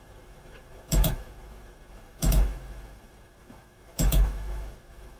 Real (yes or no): no